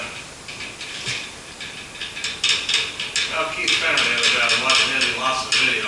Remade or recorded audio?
recorded